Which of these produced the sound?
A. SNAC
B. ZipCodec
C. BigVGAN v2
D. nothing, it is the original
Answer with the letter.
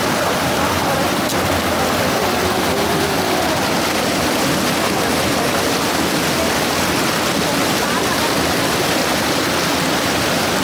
D